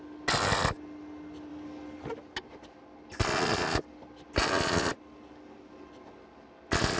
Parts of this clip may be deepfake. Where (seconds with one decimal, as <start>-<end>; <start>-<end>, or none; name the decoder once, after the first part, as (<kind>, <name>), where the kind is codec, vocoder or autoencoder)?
none